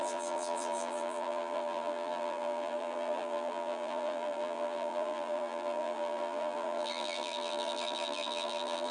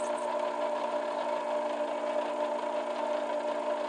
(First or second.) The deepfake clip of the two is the first